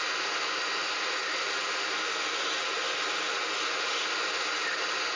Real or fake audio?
real